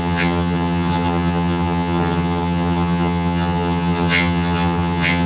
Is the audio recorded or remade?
remade